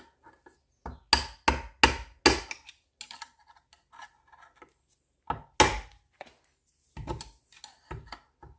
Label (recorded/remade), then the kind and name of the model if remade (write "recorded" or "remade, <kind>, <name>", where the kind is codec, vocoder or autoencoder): recorded